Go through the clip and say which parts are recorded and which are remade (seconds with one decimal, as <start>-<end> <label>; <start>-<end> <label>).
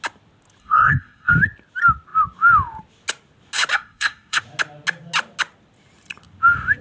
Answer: 0.0-0.6 recorded; 0.6-1.3 remade; 1.3-3.7 recorded; 3.7-4.4 remade; 4.4-6.8 recorded